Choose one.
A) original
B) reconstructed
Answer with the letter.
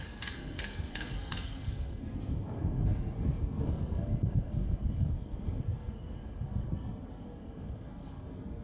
B